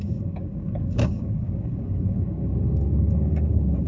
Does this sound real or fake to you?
fake